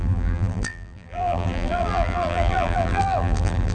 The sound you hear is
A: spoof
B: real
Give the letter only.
A